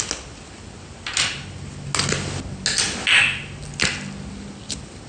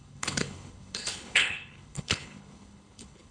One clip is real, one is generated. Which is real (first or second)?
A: first